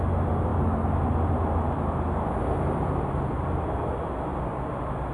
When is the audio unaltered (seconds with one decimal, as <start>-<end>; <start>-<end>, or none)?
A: 0.0-5.1